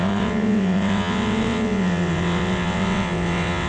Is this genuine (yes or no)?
no